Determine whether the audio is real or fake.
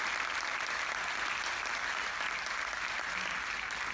real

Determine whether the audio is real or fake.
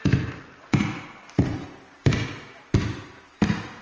real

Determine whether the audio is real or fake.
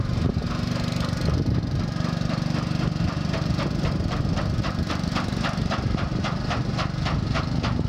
real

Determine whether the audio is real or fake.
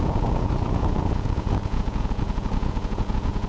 fake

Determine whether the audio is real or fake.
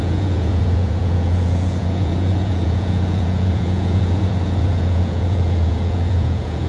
fake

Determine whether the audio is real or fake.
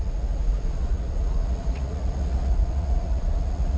fake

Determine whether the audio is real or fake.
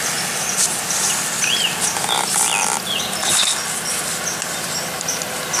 real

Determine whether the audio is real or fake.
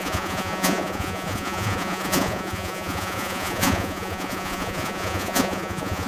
fake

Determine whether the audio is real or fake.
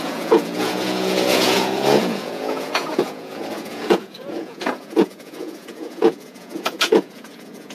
fake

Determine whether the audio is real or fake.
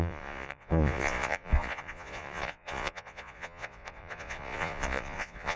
fake